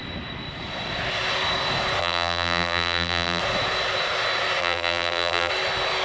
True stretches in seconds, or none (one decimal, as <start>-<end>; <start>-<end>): 0.0-2.0; 3.4-4.6; 5.5-6.0